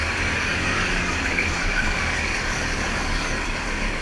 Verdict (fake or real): fake